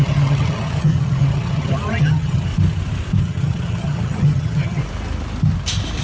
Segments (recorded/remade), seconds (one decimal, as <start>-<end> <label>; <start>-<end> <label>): 0.0-2.5 remade; 2.5-3.2 recorded; 3.2-4.8 remade; 4.8-6.0 recorded